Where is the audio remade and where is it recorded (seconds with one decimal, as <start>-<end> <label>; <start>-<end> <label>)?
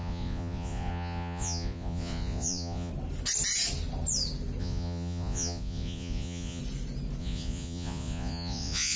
0.0-2.9 remade; 2.9-4.6 recorded; 4.6-6.6 remade; 6.6-7.2 recorded; 7.2-9.0 remade